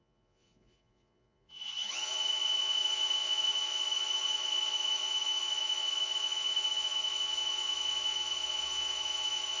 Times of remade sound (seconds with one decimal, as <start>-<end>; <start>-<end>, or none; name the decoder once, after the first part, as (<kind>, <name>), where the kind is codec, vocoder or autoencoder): 0.0-9.6 (vocoder, Vocos)